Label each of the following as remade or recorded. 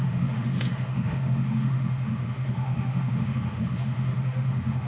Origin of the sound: remade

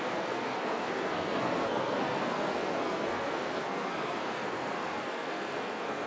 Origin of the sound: remade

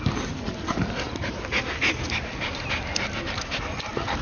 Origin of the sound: recorded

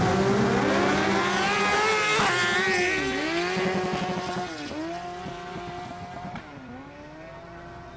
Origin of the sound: recorded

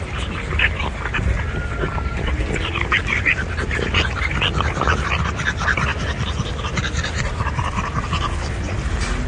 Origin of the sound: recorded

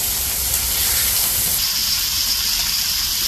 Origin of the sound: remade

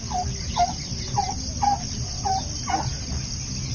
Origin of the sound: recorded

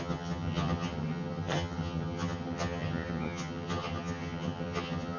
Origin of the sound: remade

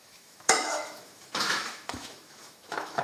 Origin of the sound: remade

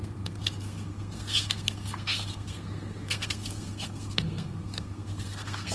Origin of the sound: remade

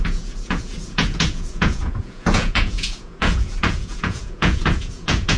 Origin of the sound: remade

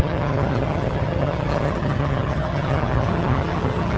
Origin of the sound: remade